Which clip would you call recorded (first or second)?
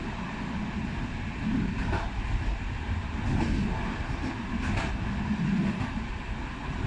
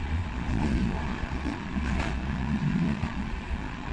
first